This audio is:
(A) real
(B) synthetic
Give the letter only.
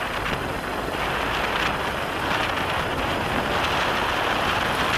A